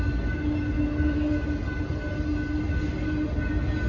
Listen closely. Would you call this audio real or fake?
real